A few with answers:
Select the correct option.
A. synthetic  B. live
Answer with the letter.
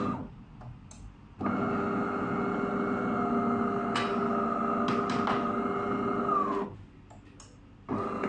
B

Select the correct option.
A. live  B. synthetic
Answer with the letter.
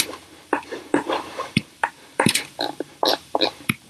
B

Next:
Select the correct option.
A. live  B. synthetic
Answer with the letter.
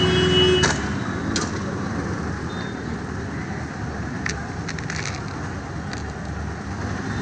A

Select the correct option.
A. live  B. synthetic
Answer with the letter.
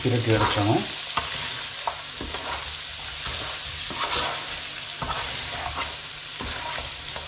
A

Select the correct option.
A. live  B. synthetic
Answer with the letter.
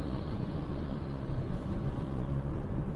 B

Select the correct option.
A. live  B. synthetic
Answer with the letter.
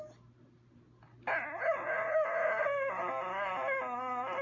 A